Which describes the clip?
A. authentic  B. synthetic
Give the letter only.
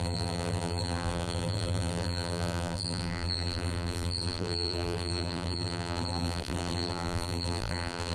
B